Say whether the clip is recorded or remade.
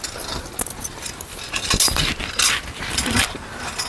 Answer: recorded